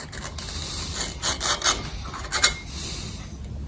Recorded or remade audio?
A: recorded